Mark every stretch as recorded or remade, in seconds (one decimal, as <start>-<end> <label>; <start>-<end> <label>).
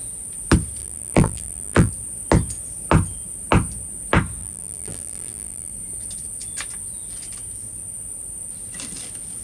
0.0-0.8 recorded; 0.8-1.9 remade; 1.9-4.4 recorded; 4.4-5.7 remade; 5.7-9.4 recorded